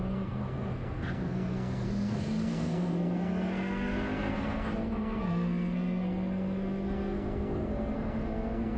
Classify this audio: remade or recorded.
remade